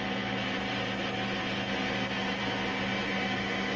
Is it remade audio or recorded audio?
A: recorded